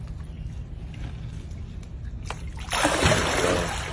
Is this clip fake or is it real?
real